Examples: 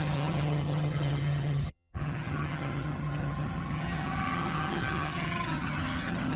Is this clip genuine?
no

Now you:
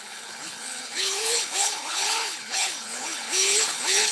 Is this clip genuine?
no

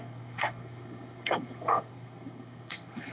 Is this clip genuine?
no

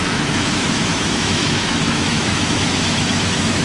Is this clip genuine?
no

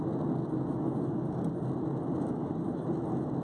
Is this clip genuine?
yes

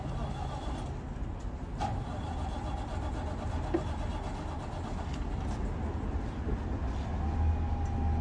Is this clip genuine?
yes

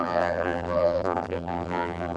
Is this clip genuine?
no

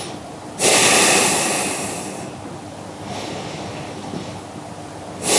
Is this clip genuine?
yes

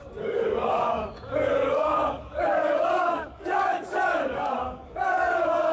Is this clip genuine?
no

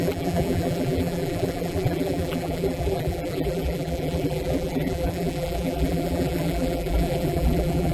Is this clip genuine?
no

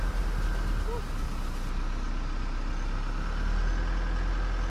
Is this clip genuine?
yes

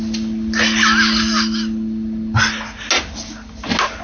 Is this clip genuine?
yes